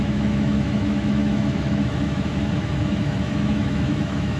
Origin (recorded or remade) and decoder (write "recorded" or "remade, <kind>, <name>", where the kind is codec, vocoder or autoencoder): remade, autoencoder, DAC-VAE